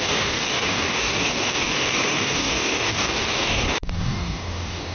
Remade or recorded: remade